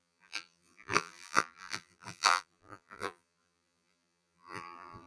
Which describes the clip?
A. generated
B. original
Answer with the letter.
A